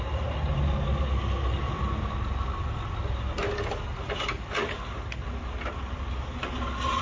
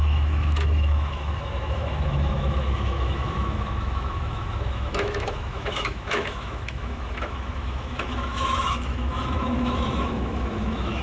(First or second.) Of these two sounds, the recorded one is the first